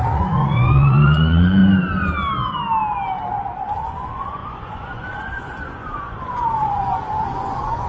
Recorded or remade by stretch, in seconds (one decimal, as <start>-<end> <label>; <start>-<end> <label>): 0.0-1.6 remade; 1.6-3.7 recorded; 3.7-7.9 remade